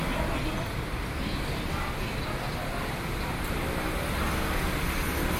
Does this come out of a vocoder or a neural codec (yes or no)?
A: no